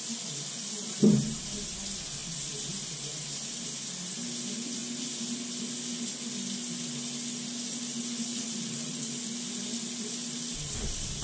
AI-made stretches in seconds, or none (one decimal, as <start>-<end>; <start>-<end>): 8.3-9.1